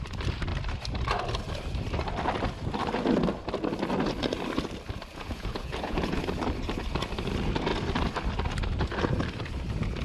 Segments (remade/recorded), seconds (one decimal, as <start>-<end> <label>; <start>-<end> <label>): 0.0-5.1 recorded; 5.1-6.2 remade; 6.2-10.0 recorded